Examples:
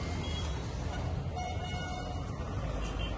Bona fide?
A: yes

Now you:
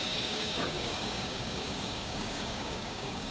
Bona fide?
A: no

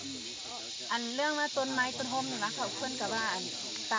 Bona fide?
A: yes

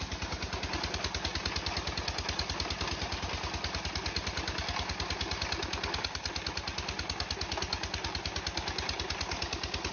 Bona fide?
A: yes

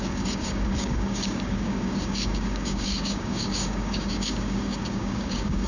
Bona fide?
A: no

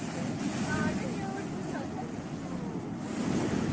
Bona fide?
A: yes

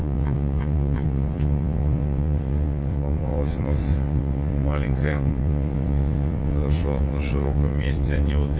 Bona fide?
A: no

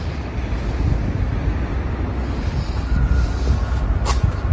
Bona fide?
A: yes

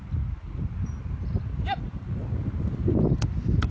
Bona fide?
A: yes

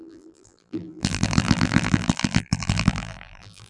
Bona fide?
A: no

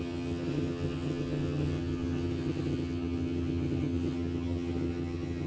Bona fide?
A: no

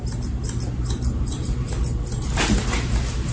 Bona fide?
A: yes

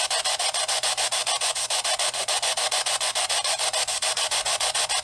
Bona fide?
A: no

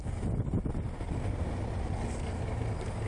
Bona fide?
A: yes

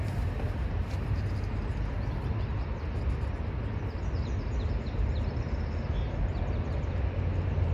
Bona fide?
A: yes